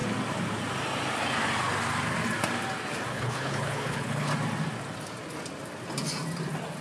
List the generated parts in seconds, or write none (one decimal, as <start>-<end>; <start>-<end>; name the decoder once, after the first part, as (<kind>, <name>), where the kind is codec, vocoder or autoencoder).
3.1-4.3 (codec, HILCodec)